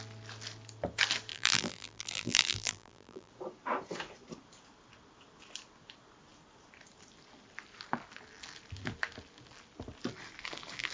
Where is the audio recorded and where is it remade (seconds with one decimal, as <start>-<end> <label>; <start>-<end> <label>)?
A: 0.0-1.3 recorded; 1.3-3.3 remade; 3.3-10.9 recorded